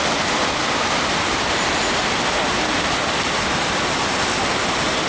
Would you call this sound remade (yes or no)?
no